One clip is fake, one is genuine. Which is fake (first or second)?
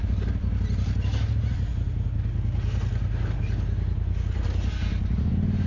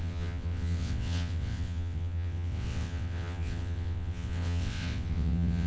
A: second